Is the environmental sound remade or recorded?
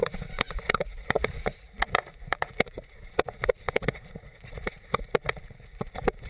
remade